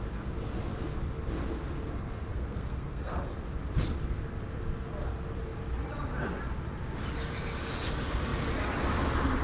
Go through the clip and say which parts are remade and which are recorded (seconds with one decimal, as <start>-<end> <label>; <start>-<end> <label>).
0.0-2.3 recorded; 2.3-3.3 remade; 3.3-9.4 recorded